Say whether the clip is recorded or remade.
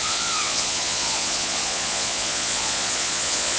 remade